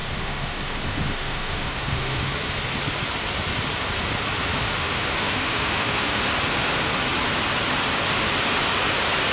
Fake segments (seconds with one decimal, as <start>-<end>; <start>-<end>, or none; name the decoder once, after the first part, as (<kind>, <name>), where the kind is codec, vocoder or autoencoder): 0.0-2.5 (autoencoder, DAC-VAE); 4.5-6.2